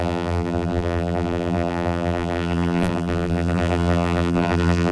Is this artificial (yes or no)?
yes